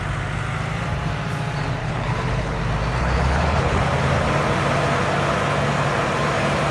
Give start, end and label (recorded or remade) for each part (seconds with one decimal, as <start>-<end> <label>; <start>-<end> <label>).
0.0-1.8 recorded; 1.8-2.6 remade; 2.6-3.0 recorded; 3.0-3.8 remade; 3.8-6.7 recorded